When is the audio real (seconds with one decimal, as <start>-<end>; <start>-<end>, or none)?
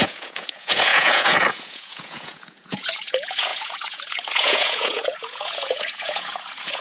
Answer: none